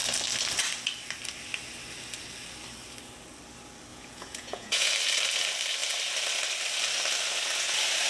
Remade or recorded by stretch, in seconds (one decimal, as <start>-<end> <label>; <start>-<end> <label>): 0.0-3.9 recorded; 3.9-4.9 remade; 4.9-8.1 recorded